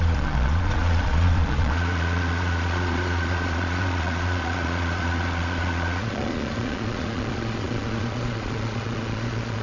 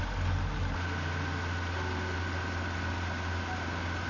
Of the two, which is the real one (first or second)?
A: second